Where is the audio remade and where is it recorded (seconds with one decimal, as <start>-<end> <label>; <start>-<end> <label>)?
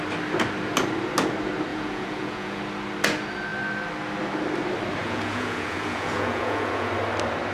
0.0-1.7 recorded; 1.7-2.6 remade; 2.6-5.0 recorded; 5.0-6.9 remade; 6.9-7.5 recorded